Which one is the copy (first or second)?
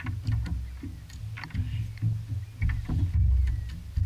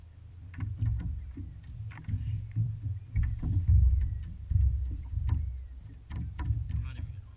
second